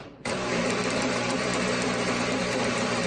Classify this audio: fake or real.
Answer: fake